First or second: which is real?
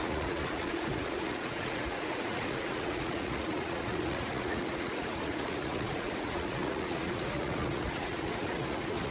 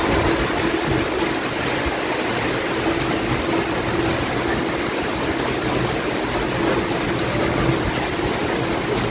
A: second